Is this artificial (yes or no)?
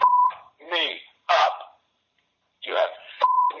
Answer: yes